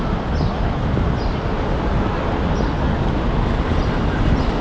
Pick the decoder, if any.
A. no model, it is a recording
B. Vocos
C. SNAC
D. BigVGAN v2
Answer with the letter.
A